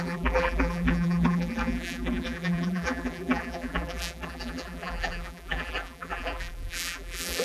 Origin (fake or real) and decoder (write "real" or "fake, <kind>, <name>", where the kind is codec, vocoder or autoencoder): fake, vocoder, BigVGAN v2